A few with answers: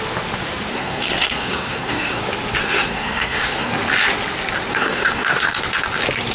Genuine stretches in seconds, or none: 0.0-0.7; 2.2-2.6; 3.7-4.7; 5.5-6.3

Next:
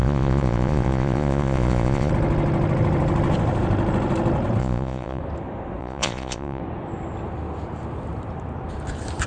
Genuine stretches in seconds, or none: 2.1-4.6; 5.2-5.8; 6.6-9.3

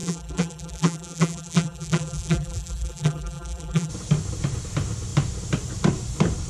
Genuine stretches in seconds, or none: 3.9-6.5

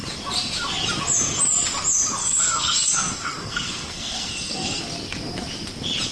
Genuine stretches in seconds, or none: 0.0-2.2; 4.8-6.1

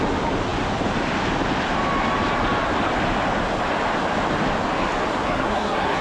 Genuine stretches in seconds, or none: 0.0-5.2

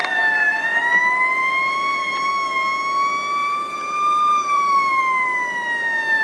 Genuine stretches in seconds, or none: 0.8-1.4; 2.3-3.4; 5.0-6.2